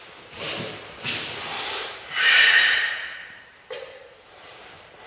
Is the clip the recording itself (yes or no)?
no